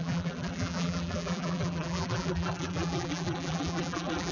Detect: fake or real fake